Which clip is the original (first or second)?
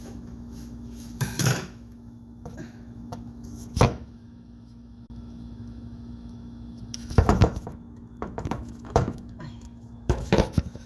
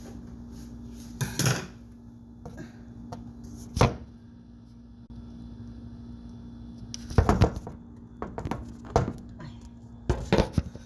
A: second